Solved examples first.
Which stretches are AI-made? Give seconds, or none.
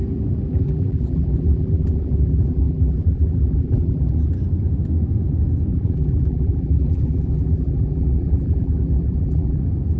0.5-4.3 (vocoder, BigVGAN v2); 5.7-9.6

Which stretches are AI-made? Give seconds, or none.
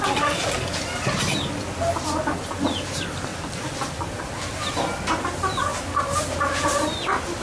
3.3-4.7 (vocoder, BigVGAN v2); 5.7-6.3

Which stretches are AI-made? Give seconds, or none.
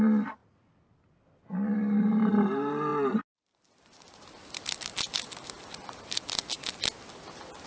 0.0-0.4 (vocoder, BigVGAN v2); 2.0-7.7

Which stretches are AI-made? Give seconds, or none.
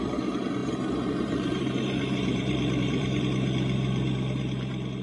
0.6-3.2 (vocoder, BigVGAN v2)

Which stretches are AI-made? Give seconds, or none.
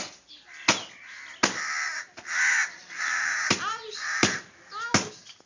2.8-4.4 (vocoder, BigVGAN v2)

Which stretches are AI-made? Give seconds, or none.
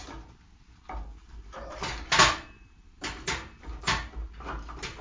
1.1-4.1 (vocoder, BigVGAN v2)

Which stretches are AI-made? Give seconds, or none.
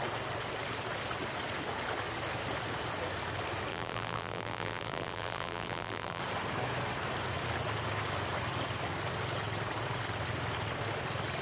3.7-6.2 (vocoder, BigVGAN v2)